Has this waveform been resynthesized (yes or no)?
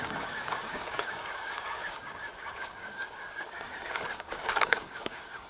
yes